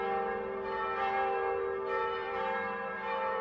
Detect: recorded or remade remade